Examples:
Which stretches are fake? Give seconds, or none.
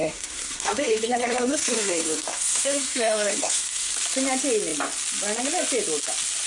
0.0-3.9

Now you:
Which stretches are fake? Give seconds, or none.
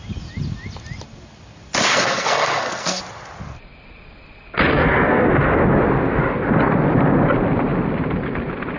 1.9-3.0; 4.7-5.3